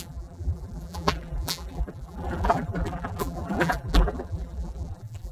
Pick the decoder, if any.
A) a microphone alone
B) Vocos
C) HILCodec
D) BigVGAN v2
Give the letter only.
D